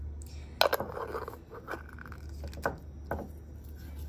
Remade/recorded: recorded